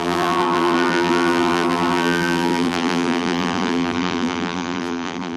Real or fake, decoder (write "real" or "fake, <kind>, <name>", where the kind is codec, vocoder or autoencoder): fake, vocoder, BigVGAN v2